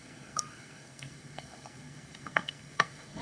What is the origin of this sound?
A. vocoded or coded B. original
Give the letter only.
A